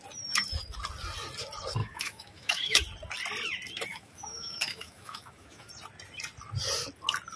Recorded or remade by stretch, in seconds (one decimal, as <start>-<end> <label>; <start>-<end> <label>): 0.0-1.8 recorded; 1.8-2.8 remade; 2.8-3.9 recorded; 3.9-5.7 remade; 5.7-7.4 recorded